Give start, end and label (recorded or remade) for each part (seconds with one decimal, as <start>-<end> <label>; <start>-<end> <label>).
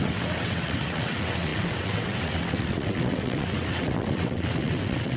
0.0-5.2 remade